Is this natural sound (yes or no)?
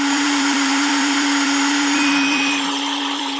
no